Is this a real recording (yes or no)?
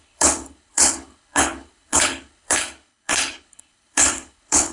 no